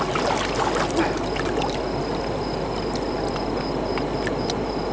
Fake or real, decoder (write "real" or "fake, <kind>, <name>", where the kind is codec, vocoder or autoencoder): real